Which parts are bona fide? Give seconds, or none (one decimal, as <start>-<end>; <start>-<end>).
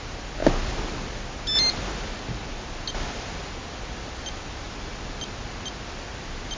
0.0-6.6